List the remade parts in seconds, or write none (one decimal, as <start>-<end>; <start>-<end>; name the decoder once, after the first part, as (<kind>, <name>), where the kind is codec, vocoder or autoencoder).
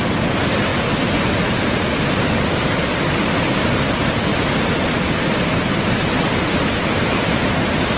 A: 4.3-5.7 (vocoder, BigVGAN v2)